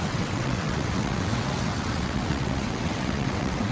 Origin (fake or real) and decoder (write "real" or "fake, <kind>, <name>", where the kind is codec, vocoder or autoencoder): fake, vocoder, WaveNeXt